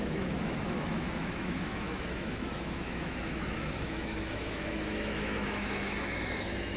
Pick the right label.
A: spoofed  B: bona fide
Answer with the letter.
A